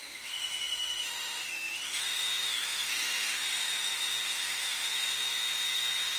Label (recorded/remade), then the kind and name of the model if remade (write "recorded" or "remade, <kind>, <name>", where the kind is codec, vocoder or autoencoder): remade, autoencoder, DAC-VAE